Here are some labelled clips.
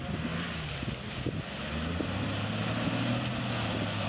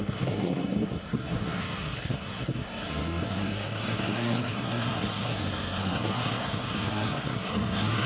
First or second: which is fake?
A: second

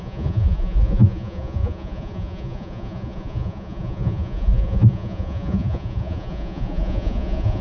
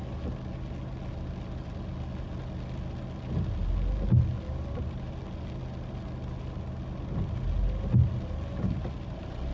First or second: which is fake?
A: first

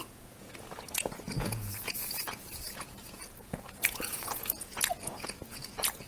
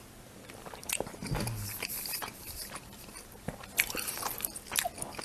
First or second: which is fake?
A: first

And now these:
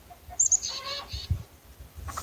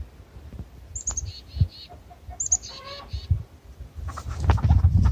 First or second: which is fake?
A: first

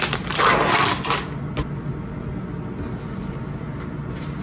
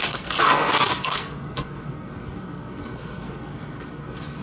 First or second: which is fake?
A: second